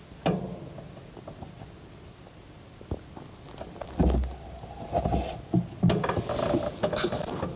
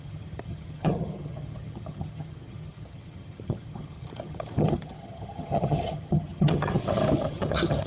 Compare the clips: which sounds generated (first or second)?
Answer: second